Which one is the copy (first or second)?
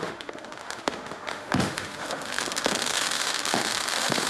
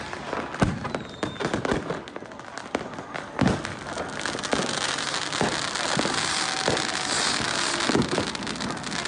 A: first